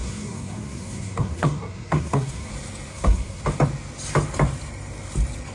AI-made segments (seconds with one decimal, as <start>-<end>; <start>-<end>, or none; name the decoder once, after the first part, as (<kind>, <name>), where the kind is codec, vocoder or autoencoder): 0.0-2.5 (codec, SNAC); 2.9-3.4